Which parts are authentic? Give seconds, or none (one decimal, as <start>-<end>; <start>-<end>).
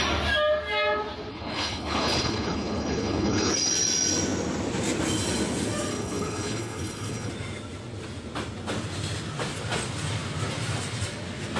0.0-1.3; 3.5-5.9; 7.3-11.6